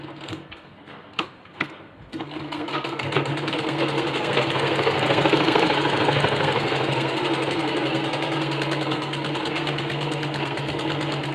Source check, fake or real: fake